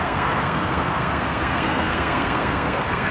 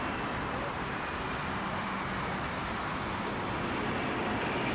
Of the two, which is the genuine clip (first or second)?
second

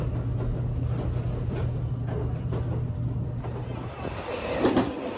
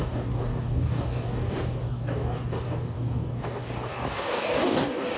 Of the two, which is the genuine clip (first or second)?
first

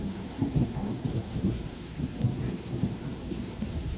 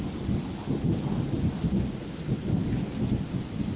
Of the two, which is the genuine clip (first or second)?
second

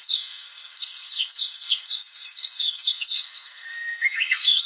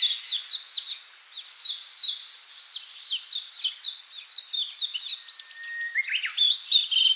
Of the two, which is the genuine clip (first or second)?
second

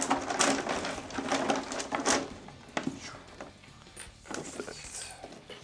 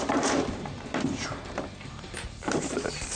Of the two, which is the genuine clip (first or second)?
first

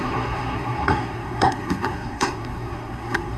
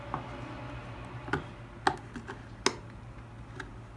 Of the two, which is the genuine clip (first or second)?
second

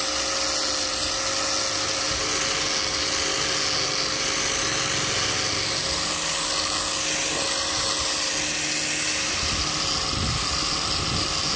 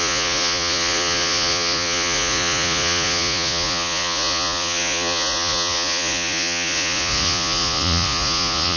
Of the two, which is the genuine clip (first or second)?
first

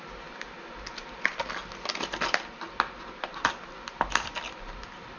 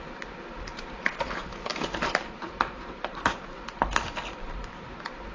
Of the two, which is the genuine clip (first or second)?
first